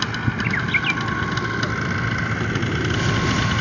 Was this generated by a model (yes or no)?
no